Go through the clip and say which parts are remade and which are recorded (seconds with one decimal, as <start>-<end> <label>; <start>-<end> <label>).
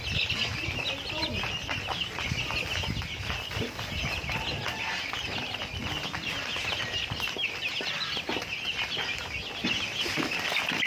0.0-5.4 recorded; 5.4-9.2 remade; 9.2-10.9 recorded